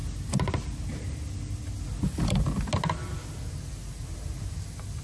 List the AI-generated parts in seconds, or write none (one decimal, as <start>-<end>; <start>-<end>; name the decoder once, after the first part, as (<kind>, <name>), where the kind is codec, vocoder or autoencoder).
none